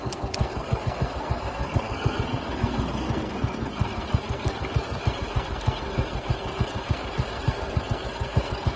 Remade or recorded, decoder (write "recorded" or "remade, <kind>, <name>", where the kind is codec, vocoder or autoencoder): remade, codec, SNAC